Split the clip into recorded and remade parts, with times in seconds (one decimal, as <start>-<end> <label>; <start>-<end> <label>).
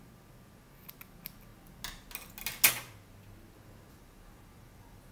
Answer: 0.0-5.1 recorded